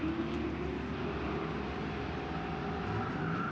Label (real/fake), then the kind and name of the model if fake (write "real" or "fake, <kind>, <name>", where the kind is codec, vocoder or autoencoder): real